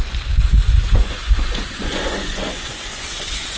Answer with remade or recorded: remade